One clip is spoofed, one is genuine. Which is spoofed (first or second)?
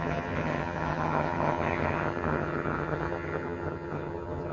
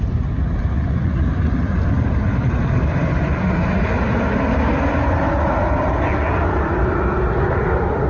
first